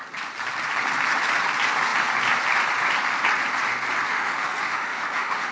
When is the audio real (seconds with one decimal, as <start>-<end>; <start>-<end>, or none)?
0.0-4.1